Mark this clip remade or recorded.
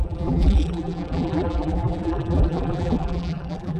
remade